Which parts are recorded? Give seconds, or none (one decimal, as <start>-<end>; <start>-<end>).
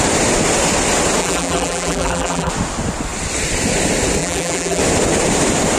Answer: 0.0-1.2; 2.5-4.2; 4.8-5.8